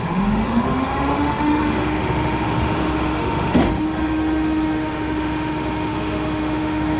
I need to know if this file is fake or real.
fake